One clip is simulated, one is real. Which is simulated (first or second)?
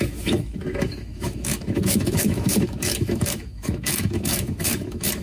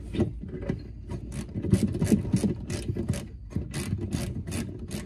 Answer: first